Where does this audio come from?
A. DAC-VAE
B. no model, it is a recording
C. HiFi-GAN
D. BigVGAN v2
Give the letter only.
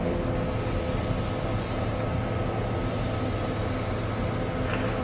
B